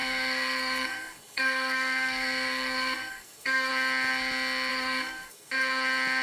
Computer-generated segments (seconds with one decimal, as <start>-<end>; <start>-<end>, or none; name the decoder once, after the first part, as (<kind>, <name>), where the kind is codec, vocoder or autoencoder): 0.0-3.7 (codec, SNAC); 4.7-5.5